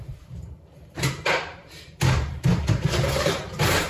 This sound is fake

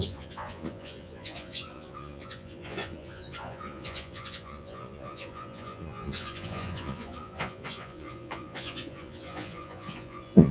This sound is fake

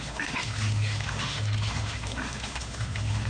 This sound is fake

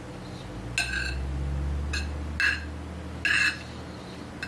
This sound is real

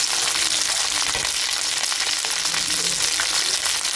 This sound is real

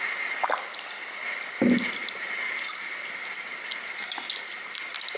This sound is real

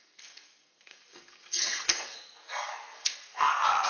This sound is fake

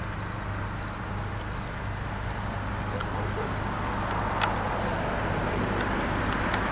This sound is real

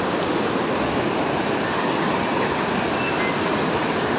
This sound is real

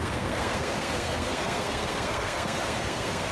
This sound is fake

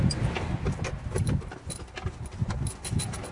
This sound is real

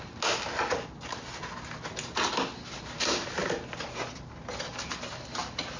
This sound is real